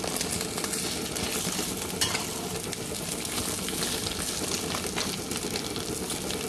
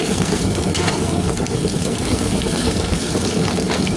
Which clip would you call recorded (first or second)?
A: first